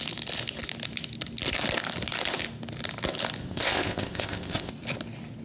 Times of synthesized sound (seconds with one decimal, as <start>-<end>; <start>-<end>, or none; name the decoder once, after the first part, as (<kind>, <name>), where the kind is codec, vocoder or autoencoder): 3.4-4.7 (codec, ZipCodec)